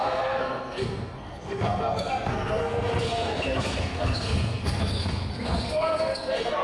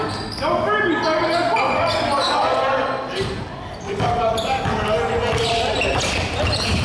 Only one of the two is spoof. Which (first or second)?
first